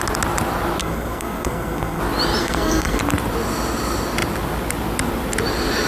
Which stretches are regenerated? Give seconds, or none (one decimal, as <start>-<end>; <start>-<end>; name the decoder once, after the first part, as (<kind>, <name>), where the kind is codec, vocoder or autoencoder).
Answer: 0.8-2.0 (codec, SNAC); 2.4-3.0